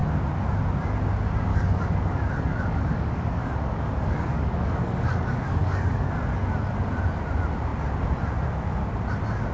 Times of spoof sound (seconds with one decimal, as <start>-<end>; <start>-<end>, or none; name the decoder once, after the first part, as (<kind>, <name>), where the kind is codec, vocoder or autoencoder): 1.5-6.1 (codec, DAC)